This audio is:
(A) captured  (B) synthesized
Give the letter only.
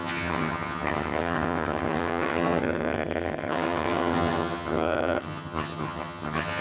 B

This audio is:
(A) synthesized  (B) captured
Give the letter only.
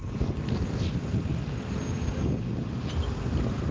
B